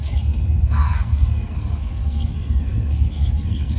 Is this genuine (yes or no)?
no